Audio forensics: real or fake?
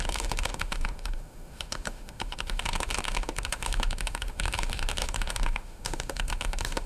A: fake